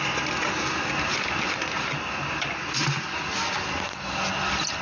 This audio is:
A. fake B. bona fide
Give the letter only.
B